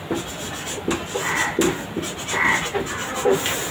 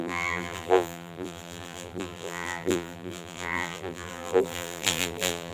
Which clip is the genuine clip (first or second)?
first